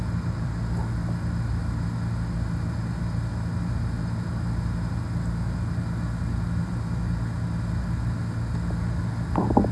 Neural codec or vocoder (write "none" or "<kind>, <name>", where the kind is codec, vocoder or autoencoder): none